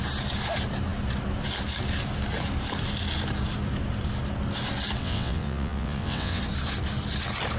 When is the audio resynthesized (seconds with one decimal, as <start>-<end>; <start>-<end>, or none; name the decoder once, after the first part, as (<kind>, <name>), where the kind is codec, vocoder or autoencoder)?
5.0-6.4 (vocoder, WaveNeXt)